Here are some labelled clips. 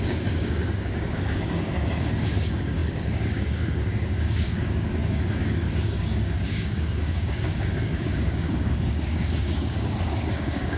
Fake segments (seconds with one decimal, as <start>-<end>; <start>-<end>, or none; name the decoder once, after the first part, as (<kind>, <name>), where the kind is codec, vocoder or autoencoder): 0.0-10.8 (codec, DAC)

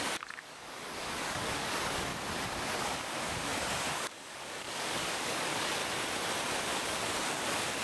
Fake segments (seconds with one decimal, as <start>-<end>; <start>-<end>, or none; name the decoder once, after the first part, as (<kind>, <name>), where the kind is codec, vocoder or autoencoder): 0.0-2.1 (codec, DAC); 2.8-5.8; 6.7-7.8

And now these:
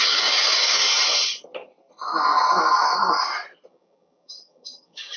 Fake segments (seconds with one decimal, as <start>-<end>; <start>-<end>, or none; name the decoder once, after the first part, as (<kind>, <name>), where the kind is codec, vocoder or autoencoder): 0.0-0.8 (codec, DAC); 3.7-5.2

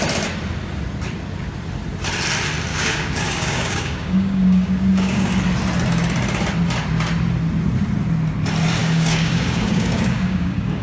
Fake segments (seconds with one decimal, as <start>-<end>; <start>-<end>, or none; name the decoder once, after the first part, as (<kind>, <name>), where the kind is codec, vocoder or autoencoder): 2.7-5.3 (codec, DAC); 8.8-10.8

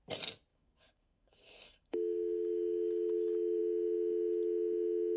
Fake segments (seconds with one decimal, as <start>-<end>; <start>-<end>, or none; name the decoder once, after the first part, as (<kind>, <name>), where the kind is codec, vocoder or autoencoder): 0.5-3.6 (codec, DAC)

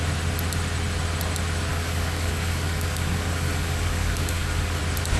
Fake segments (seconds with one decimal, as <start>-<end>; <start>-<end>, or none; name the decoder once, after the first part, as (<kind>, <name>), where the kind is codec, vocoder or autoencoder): 1.7-4.8 (codec, DAC)